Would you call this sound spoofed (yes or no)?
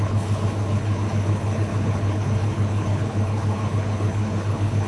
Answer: yes